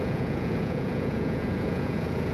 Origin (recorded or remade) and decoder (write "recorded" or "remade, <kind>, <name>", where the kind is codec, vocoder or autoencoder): remade, vocoder, Vocos